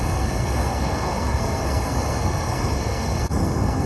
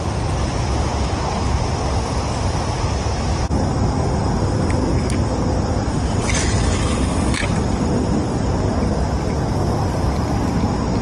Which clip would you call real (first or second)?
second